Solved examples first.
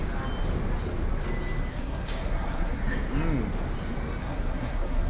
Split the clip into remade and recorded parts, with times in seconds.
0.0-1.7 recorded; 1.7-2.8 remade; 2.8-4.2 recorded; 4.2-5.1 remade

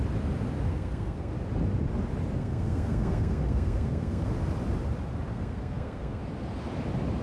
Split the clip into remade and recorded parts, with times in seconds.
0.0-0.7 recorded; 0.7-1.3 remade; 1.3-2.4 recorded; 2.4-4.3 remade; 4.3-5.3 recorded; 5.3-6.2 remade; 6.2-7.2 recorded